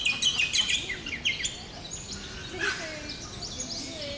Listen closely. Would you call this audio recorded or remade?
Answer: recorded